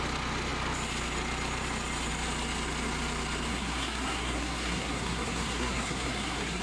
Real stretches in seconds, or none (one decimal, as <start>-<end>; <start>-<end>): 0.0-3.5